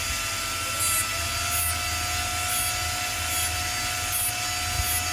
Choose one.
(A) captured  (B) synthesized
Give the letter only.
A